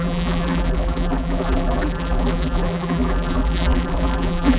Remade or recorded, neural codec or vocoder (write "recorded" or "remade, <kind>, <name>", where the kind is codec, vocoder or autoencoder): remade, vocoder, BigVGAN v2